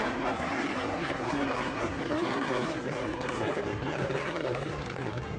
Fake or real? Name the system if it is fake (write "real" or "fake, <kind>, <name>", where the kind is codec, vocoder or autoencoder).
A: fake, codec, SNAC